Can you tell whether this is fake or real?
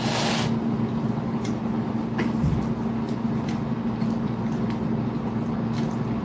real